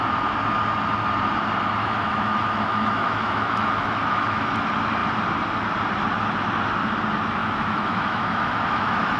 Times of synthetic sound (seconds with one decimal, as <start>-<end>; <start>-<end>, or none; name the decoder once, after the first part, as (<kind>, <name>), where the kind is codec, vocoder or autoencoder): 1.8-4.5 (autoencoder, DAC-VAE); 7.4-9.2